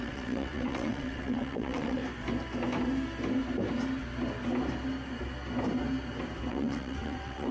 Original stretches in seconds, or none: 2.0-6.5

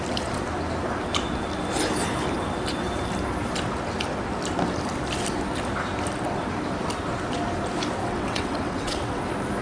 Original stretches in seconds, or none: 0.0-8.0; 9.2-9.6

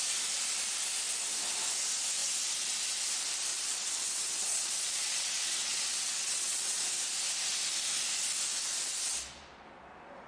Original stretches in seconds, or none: 0.0-3.5; 6.8-10.3

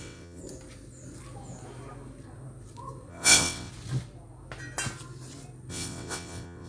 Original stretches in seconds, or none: 0.4-3.1; 3.7-5.7

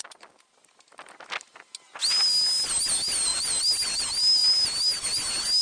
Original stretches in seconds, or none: 0.0-5.6

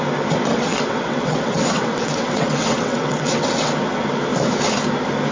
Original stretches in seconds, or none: 0.0-0.5; 3.7-5.3

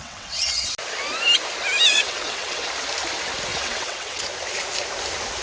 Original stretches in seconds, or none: 0.7-1.9; 2.7-3.5; 4.2-5.4